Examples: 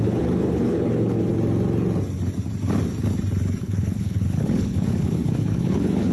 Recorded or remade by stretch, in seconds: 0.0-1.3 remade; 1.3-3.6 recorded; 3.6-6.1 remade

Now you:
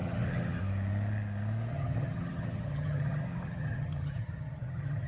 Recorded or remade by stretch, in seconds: 0.0-0.6 remade; 0.6-1.7 recorded; 1.7-5.1 remade